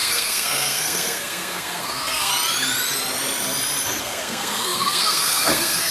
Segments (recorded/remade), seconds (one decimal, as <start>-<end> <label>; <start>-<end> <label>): 0.0-2.3 remade; 2.3-4.0 recorded; 4.0-5.9 remade